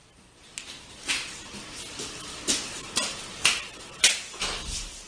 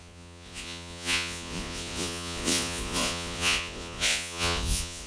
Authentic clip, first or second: first